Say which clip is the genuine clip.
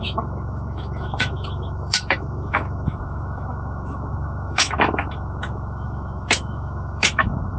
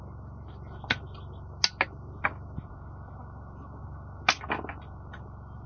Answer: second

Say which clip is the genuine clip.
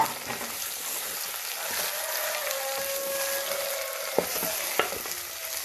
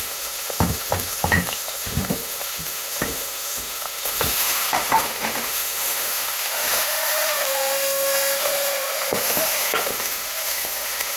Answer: first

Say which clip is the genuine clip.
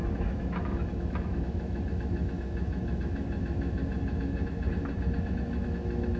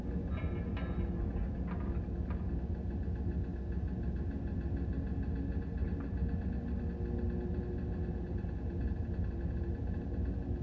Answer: second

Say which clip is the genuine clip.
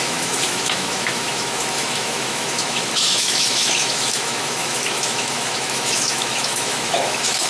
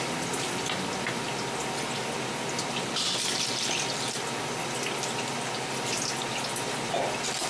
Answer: second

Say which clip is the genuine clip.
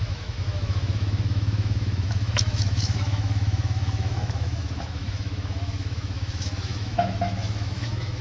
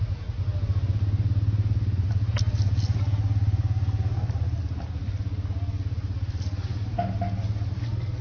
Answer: second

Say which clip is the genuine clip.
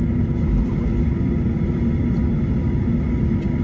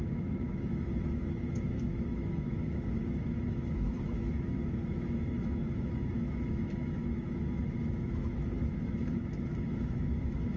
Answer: first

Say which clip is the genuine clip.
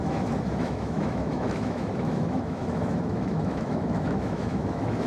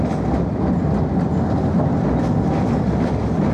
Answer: second